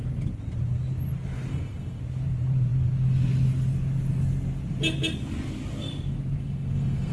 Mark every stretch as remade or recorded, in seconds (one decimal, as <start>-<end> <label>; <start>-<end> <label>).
0.0-1.5 recorded; 1.5-2.0 remade; 2.0-6.4 recorded; 6.4-7.1 remade